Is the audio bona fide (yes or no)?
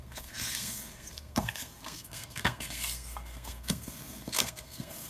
no